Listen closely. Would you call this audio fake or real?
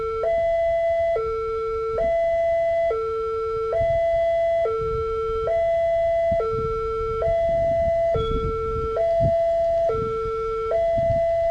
real